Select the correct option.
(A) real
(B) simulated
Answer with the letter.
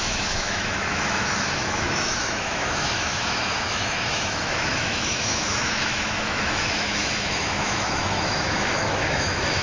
B